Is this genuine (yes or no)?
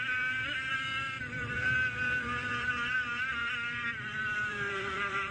no